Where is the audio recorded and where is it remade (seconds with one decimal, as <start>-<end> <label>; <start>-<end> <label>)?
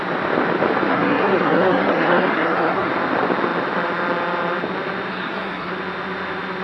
0.0-0.9 recorded; 0.9-2.9 remade; 2.9-5.1 recorded; 5.1-5.7 remade; 5.7-6.6 recorded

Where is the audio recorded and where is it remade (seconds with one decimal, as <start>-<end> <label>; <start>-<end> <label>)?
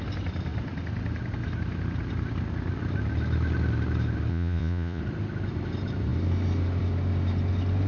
0.0-4.3 recorded; 4.3-5.0 remade; 5.0-7.9 recorded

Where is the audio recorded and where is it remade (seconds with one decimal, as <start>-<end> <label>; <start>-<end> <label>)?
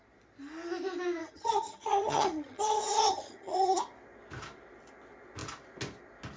0.0-1.2 recorded; 1.2-3.8 remade; 3.8-6.4 recorded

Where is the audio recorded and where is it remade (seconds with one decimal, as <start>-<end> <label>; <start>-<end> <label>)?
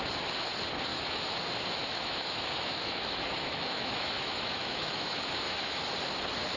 0.0-0.9 recorded; 0.9-1.4 remade; 1.4-1.8 recorded; 1.8-5.8 remade; 5.8-6.6 recorded